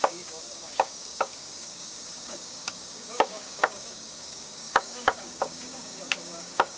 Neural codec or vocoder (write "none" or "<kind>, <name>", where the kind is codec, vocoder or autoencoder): codec, DAC